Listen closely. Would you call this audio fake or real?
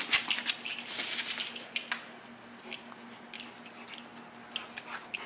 real